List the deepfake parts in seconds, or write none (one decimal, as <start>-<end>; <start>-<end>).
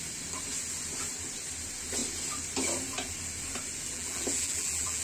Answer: 3.9-5.0